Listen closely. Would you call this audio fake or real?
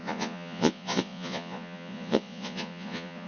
fake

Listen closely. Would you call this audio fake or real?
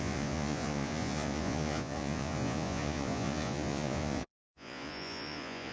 fake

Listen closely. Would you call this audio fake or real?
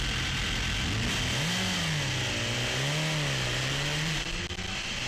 real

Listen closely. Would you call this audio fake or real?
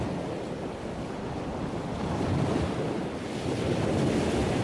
real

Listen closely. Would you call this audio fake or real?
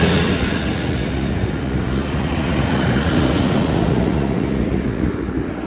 fake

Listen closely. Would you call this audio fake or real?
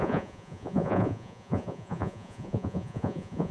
fake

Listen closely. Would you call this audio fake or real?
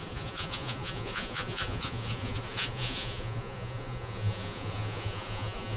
fake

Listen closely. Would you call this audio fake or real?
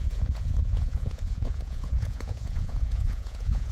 fake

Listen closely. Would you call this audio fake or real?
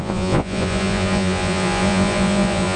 fake